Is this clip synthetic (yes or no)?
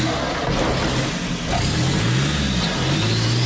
no